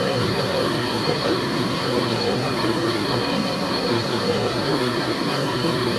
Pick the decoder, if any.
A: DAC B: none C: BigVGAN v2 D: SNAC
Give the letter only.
D